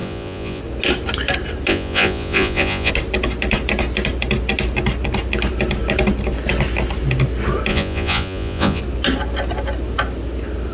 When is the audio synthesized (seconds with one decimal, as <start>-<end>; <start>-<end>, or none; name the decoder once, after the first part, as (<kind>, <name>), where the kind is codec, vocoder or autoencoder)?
0.0-0.6 (vocoder, Vocos); 1.7-2.9; 7.7-8.8